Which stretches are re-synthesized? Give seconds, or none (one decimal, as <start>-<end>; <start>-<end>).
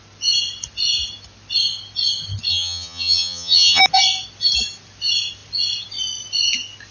2.5-3.8